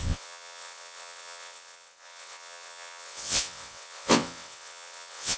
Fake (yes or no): yes